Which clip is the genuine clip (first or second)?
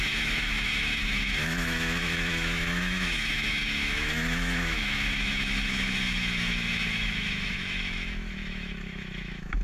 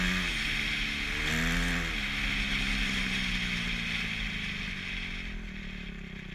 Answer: second